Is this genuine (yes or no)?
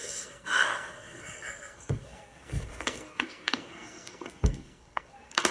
no